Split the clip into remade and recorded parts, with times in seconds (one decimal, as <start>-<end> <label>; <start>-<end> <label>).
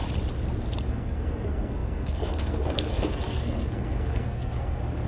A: 0.0-0.9 recorded; 0.9-5.1 remade